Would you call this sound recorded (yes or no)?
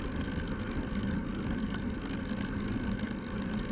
yes